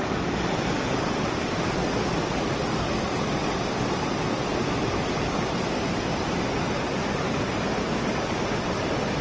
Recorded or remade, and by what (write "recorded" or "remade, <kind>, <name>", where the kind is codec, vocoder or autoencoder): recorded